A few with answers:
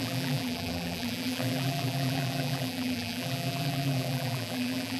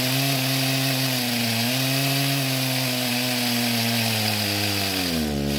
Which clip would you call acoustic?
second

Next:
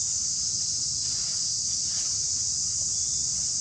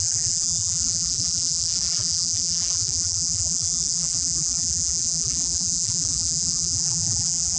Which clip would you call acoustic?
first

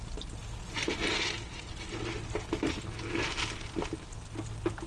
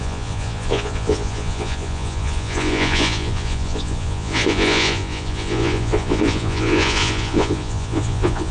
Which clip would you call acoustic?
first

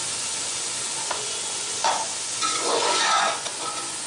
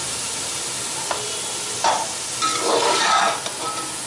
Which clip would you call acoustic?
second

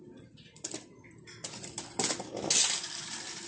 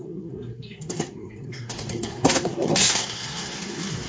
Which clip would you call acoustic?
first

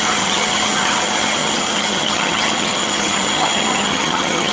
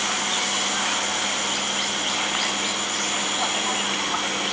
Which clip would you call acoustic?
second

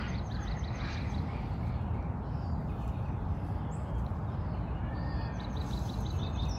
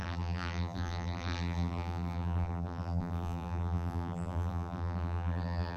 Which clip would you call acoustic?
first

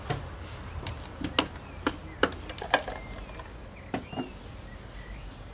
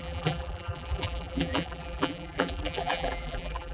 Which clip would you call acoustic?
first